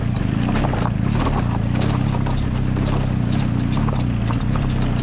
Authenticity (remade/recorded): recorded